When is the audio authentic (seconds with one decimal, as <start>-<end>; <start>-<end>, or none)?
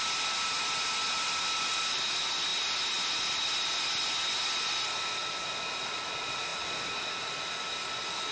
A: 0.0-8.3